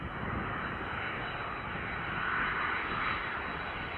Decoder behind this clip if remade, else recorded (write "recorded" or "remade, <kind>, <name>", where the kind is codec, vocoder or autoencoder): recorded